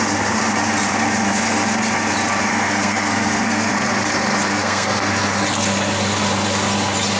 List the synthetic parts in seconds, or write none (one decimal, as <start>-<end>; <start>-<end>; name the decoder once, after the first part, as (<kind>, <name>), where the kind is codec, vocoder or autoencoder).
2.5-3.7 (codec, SNAC); 4.5-5.1